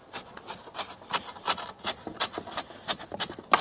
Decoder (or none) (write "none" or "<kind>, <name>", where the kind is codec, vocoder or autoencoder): none